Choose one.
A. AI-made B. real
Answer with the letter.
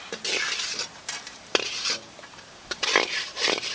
A